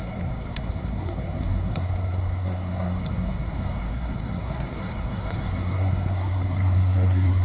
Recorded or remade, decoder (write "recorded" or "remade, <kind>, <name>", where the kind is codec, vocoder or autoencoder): remade, codec, SNAC